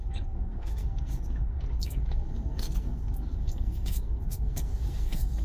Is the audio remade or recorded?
remade